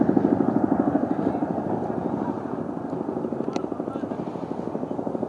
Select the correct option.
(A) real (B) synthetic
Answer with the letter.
B